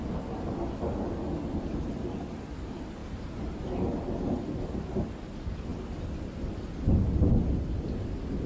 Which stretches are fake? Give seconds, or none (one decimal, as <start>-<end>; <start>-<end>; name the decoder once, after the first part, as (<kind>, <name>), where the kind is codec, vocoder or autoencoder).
none